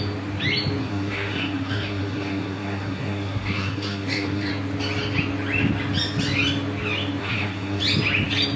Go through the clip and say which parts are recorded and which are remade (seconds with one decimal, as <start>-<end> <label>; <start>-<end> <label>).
0.0-0.8 recorded; 0.8-4.5 remade; 4.5-7.2 recorded; 7.2-7.8 remade; 7.8-8.6 recorded